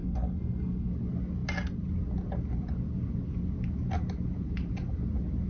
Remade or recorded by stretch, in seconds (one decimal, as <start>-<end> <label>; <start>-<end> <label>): 0.0-0.9 remade; 0.9-5.5 recorded